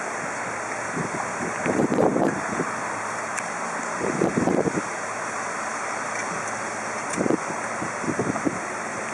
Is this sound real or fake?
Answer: fake